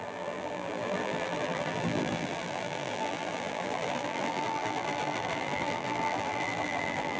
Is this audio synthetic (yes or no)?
yes